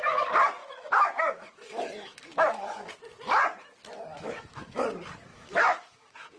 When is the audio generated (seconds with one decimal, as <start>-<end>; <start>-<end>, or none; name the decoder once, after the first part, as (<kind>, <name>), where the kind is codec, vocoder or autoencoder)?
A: 0.6-2.9 (autoencoder, DAC-VAE); 4.1-4.8; 5.3-6.4